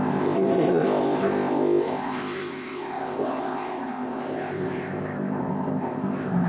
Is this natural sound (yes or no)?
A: no